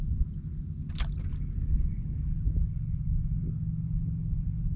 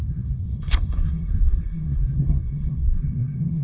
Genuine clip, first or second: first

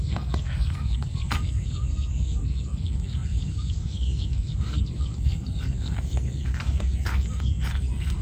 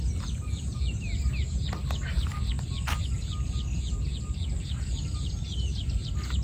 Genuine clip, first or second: second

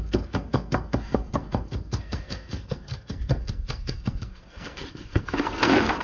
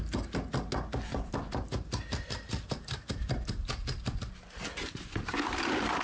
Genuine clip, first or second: second